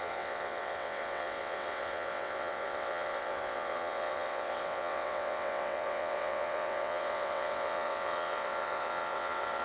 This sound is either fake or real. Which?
fake